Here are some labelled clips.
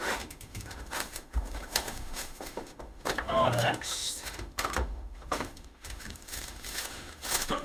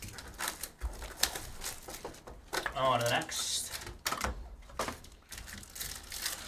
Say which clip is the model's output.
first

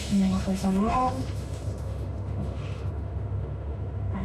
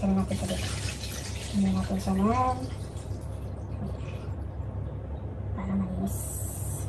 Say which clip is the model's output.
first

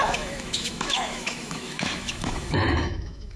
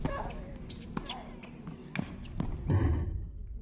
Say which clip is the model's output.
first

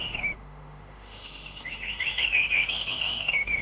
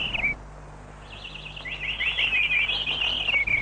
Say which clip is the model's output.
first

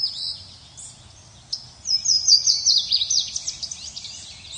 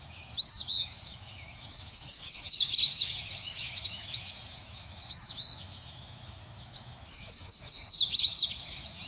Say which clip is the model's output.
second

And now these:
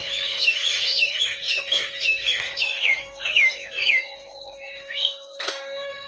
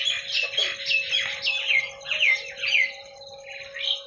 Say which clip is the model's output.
first